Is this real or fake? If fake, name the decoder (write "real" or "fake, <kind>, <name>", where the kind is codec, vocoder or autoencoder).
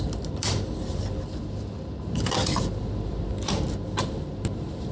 fake, vocoder, BigVGAN v2